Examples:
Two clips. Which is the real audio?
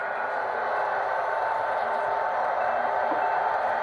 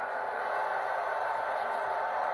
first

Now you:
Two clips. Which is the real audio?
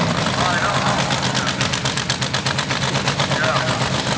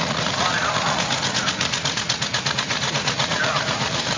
first